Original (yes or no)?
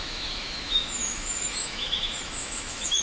no